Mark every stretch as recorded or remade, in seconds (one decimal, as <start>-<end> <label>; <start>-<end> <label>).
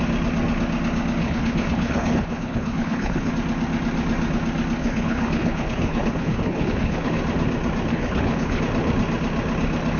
0.0-1.2 recorded; 1.2-3.3 remade; 3.3-4.8 recorded; 4.8-7.2 remade; 7.2-7.9 recorded; 7.9-8.6 remade; 8.6-10.0 recorded